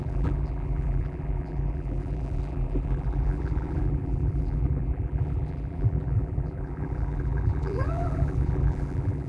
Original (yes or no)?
no